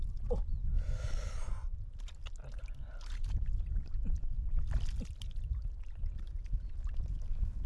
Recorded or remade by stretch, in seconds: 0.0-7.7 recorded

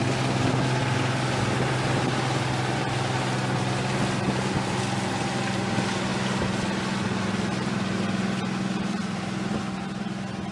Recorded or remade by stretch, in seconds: 0.0-10.5 recorded

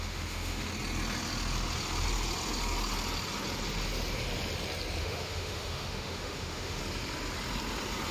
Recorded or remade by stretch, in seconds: 0.0-0.7 remade; 0.7-5.0 recorded; 5.0-6.8 remade; 6.8-8.1 recorded

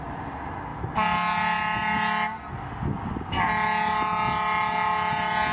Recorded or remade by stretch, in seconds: 0.0-5.5 recorded